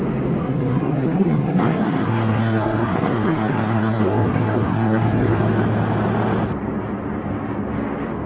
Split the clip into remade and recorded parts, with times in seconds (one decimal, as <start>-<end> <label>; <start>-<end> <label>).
0.0-0.4 recorded; 0.4-5.4 remade; 5.4-8.3 recorded